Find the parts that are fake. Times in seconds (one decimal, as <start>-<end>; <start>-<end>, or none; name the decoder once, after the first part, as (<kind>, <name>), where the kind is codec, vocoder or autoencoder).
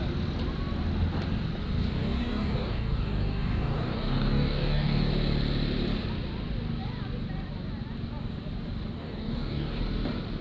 2.0-5.1 (codec, DAC); 9.0-9.8